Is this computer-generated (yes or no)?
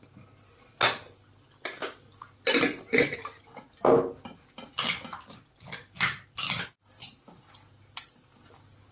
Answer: no